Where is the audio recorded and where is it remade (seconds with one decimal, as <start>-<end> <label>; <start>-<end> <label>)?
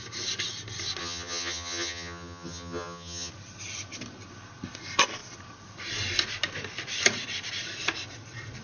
0.0-1.0 recorded; 1.0-3.3 remade; 3.3-8.6 recorded